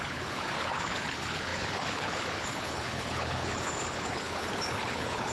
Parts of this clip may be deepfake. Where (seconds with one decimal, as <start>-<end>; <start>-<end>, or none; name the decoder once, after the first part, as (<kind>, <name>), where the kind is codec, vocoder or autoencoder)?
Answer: 0.0-5.3 (codec, HILCodec)